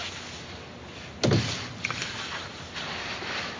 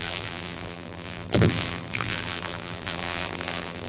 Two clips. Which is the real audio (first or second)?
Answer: first